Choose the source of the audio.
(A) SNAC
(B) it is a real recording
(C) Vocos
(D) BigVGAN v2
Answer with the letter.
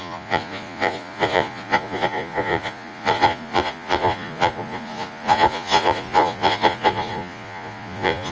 C